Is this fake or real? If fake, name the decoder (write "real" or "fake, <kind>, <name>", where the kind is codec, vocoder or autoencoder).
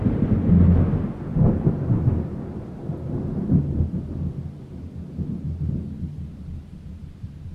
real